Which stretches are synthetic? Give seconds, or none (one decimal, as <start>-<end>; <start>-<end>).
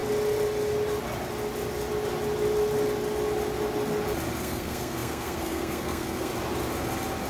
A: 4.4-6.3